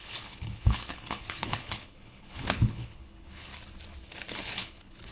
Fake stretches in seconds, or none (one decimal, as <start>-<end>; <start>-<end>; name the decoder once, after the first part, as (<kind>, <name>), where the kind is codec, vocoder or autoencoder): 0.0-3.5 (codec, HILCodec); 4.3-5.1